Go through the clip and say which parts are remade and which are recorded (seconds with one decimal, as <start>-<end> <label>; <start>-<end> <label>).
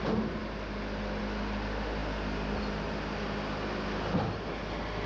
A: 0.0-5.1 recorded